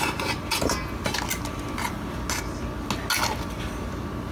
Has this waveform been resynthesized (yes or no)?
no